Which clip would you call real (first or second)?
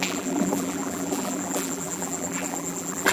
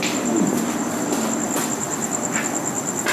second